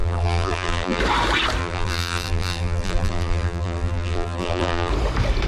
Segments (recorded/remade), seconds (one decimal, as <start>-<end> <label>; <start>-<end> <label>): 0.0-1.0 remade; 1.0-1.6 recorded; 1.6-4.9 remade; 4.9-5.5 recorded

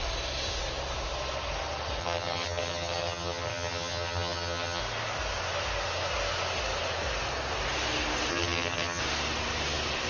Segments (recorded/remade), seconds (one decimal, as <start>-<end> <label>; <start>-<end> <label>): 0.0-2.0 recorded; 2.0-4.8 remade; 4.8-8.3 recorded; 8.3-9.0 remade; 9.0-10.1 recorded

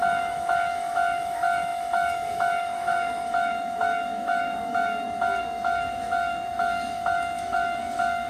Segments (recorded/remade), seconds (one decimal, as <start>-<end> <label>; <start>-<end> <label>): 0.0-8.3 remade

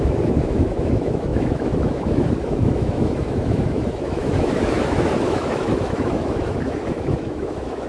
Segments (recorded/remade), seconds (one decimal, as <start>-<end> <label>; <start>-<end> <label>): 0.0-7.9 remade

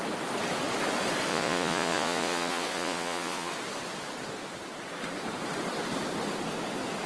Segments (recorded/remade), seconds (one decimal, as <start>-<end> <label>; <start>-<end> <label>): 0.0-1.3 recorded; 1.3-3.5 remade; 3.5-7.1 recorded

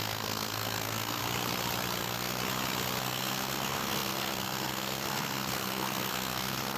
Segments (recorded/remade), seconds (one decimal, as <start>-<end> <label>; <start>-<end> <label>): 0.0-1.2 remade; 1.2-2.0 recorded; 2.0-2.4 remade; 2.4-3.0 recorded; 3.0-6.8 remade